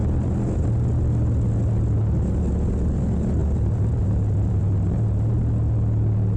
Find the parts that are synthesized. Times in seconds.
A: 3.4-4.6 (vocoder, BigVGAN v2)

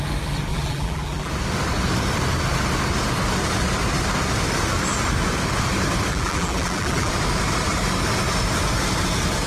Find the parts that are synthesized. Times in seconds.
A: 0.5-1.3 (vocoder, BigVGAN v2); 6.1-7.1

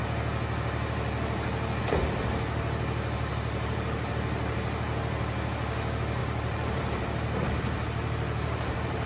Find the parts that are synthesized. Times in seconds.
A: 3.3-4.1 (vocoder, BigVGAN v2); 6.2-9.1

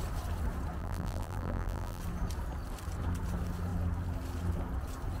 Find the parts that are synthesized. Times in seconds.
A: 0.8-2.0 (vocoder, BigVGAN v2)

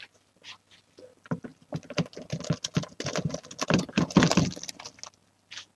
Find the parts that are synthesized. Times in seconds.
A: 1.5-5.0 (vocoder, BigVGAN v2)

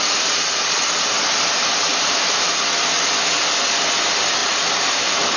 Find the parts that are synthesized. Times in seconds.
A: 1.9-2.5 (vocoder, BigVGAN v2); 4.4-5.0